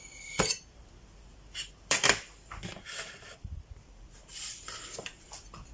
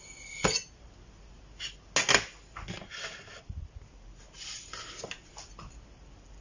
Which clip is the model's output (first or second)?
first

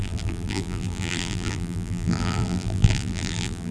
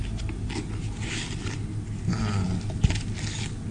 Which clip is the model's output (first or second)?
first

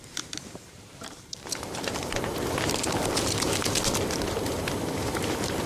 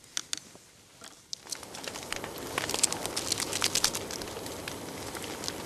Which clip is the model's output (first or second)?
first